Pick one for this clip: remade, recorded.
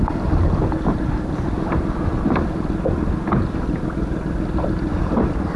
recorded